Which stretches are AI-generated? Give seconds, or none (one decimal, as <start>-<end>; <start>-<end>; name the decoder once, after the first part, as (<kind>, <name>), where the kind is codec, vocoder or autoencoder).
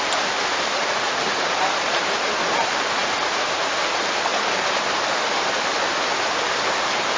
0.8-1.6 (vocoder, Vocos)